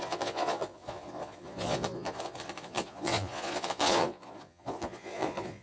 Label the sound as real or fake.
fake